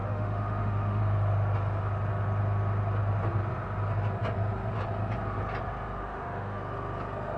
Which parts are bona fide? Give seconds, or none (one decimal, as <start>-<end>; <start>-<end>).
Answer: 1.0-6.0; 6.6-7.4